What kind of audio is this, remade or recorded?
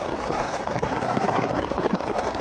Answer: remade